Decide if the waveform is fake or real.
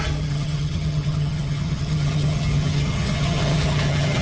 fake